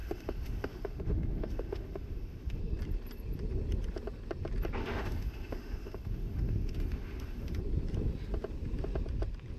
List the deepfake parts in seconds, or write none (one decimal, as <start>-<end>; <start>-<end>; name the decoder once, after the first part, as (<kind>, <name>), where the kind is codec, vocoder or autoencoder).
0.0-2.6 (autoencoder, DAC-VAE); 4.8-7.6